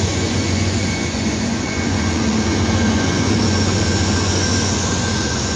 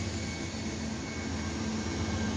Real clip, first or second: second